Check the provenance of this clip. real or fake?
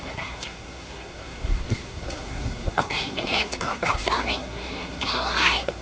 fake